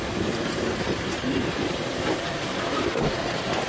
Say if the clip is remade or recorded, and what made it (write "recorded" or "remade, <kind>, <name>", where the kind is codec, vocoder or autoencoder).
remade, vocoder, BigVGAN v2